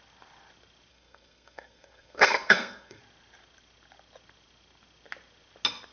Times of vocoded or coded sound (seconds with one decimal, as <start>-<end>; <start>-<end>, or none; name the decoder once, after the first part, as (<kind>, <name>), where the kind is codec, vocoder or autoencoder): 0.9-3.0 (codec, SNAC)